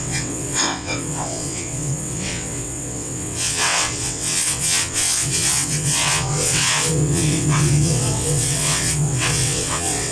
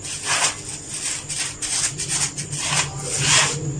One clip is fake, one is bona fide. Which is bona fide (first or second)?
second